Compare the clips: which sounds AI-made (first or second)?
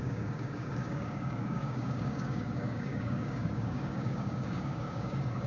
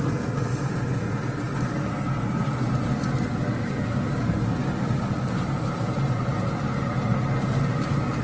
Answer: first